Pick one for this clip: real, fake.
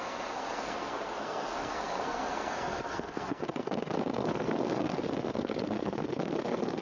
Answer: fake